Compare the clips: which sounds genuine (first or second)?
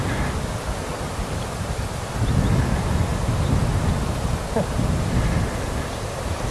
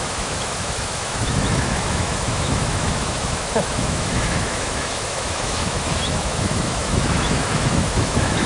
first